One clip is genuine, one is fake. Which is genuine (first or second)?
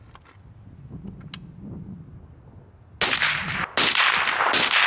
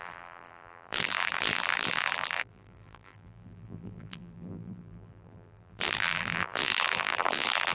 first